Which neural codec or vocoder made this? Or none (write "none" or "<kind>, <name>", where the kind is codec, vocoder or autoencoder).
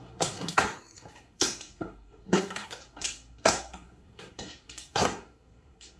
codec, SNAC